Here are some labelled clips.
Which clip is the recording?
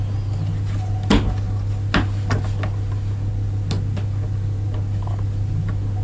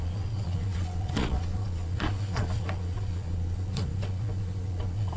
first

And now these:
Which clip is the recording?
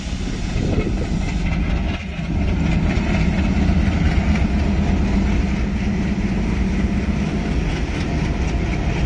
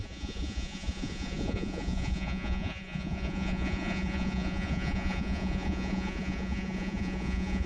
first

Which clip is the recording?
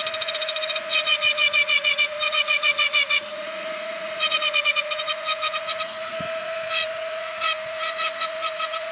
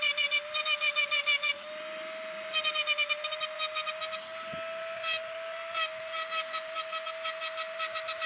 second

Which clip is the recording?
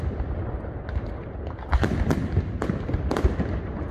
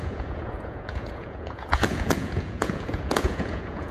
first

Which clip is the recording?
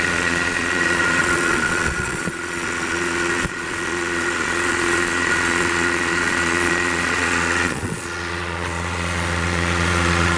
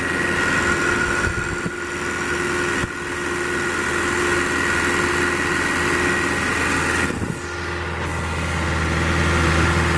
second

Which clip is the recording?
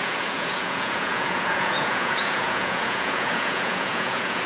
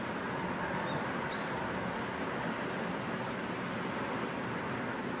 second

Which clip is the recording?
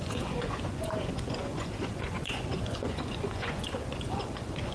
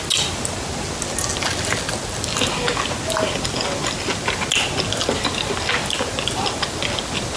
second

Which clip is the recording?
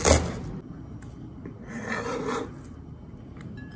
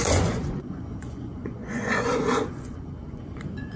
first